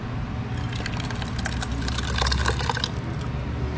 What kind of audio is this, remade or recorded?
recorded